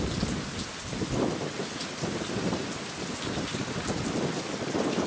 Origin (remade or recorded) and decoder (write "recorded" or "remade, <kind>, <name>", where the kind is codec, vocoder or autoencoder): recorded